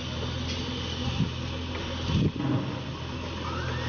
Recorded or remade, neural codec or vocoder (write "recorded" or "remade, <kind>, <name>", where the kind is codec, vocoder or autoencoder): recorded